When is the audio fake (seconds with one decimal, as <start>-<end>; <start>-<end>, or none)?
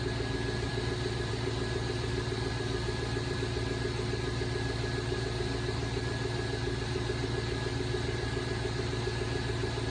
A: none